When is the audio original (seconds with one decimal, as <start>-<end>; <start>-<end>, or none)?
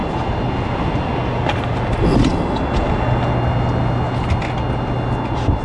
0.0-5.6